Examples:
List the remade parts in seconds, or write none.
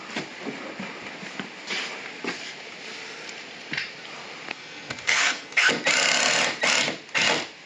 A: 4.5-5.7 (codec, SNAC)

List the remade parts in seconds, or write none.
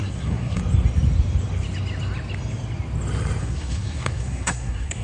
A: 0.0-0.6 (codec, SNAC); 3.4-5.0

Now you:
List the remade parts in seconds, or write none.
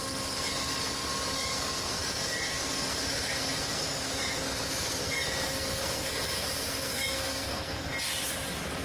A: 0.0-7.9 (codec, SNAC)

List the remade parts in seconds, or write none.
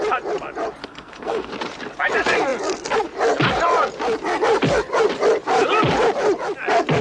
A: 0.8-1.5 (codec, SNAC)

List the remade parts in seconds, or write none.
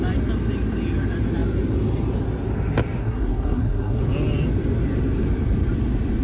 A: 3.0-4.0 (codec, SNAC)